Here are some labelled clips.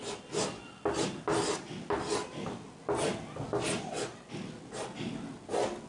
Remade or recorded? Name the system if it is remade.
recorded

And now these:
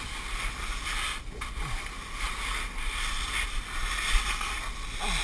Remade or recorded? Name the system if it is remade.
recorded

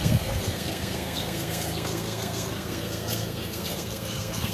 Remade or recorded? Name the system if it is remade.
remade, codec, SNAC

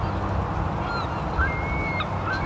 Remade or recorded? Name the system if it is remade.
recorded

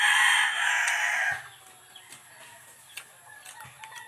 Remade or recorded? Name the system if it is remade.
recorded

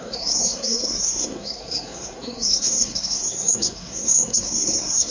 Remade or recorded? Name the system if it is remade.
remade, codec, SNAC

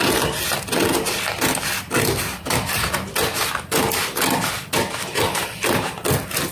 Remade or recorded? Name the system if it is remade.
recorded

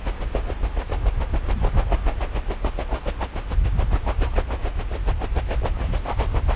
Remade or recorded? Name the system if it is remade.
recorded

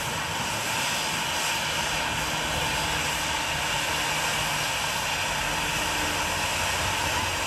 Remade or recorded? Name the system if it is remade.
recorded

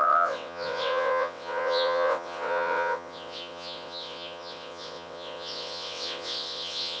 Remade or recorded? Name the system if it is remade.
remade, vocoder, WaveNeXt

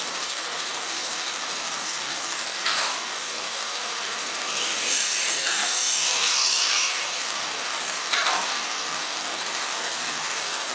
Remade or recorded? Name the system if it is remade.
remade, codec, DAC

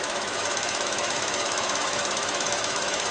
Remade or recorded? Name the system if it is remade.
remade, autoencoder, DAC-VAE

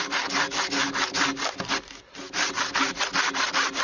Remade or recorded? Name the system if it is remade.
recorded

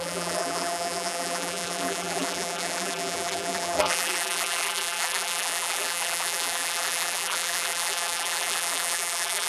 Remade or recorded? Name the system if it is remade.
remade, vocoder, BigVGAN v2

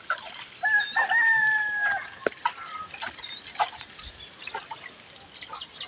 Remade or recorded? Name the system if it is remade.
recorded